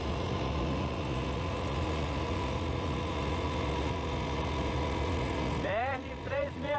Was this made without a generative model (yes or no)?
no